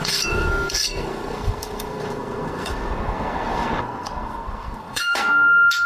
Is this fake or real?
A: fake